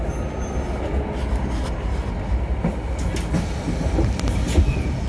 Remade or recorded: recorded